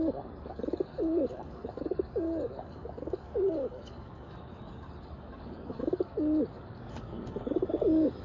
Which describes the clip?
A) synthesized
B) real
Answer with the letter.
A